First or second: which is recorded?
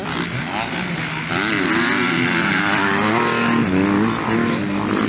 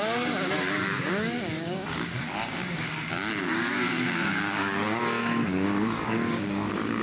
first